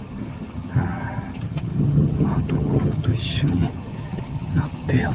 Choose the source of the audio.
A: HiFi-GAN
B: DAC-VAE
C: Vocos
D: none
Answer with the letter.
A